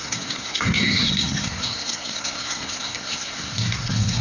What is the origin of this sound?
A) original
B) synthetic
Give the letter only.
B